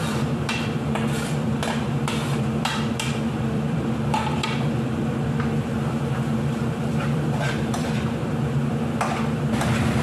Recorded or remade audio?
remade